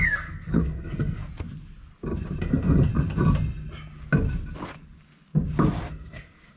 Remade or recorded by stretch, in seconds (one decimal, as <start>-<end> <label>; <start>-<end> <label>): 0.0-1.2 remade; 1.2-2.4 recorded; 2.4-2.9 remade; 2.9-5.9 recorded; 5.9-6.6 remade